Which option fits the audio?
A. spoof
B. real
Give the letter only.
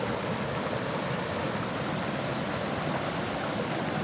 B